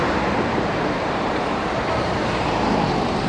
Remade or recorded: remade